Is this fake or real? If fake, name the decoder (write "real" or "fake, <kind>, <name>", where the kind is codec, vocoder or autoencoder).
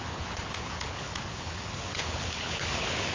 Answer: fake, codec, HILCodec